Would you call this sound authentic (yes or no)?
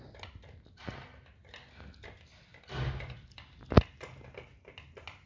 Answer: yes